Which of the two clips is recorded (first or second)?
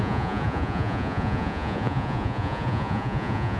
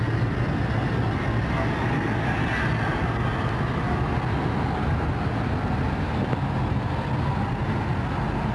second